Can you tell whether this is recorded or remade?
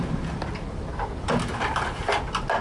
recorded